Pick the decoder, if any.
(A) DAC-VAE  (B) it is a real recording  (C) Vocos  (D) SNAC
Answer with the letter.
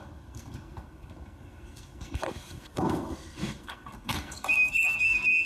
D